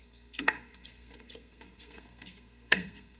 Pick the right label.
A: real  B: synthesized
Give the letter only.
B